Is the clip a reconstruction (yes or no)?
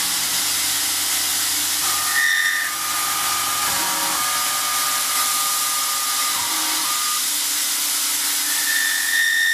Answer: no